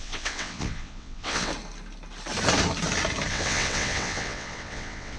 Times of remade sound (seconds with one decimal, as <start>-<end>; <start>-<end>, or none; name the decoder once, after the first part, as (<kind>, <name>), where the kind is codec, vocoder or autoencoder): 0.0-1.5 (vocoder, WaveNeXt); 3.3-5.2